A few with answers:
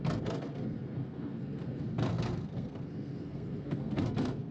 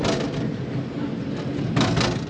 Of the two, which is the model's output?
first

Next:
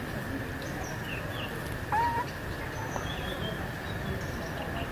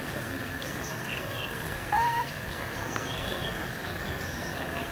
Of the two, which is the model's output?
second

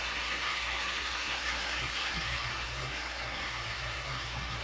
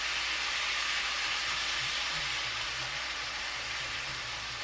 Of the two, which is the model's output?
first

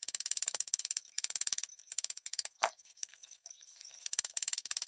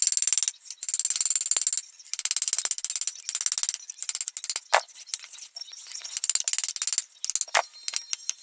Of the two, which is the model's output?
first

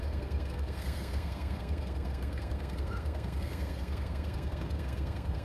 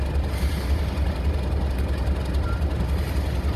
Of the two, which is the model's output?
first